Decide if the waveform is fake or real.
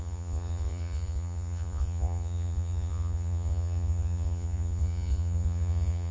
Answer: fake